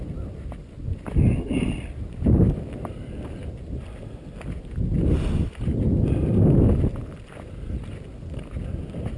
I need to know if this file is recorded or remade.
recorded